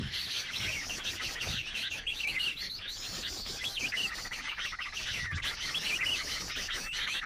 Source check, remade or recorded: remade